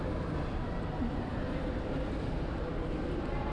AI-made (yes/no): no